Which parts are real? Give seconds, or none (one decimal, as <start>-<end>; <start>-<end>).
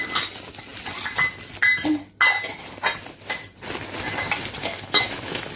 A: 0.0-4.6